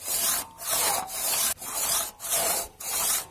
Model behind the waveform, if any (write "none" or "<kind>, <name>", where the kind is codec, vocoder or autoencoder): vocoder, BigVGAN v2